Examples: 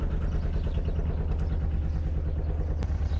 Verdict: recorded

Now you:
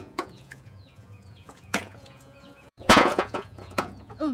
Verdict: remade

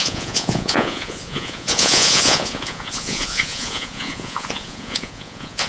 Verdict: remade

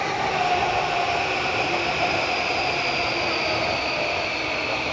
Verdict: recorded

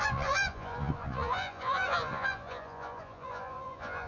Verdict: remade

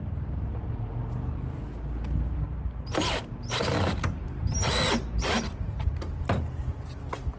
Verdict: recorded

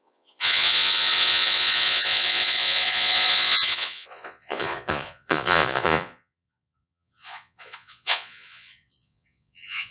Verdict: remade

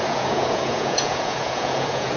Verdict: remade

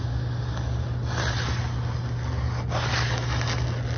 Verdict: recorded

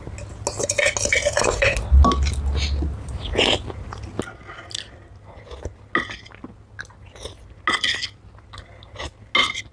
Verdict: recorded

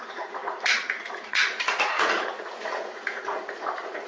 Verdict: remade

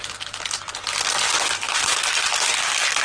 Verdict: recorded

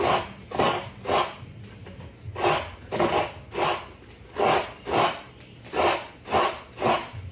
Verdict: recorded